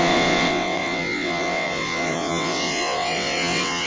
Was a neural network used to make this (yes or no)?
yes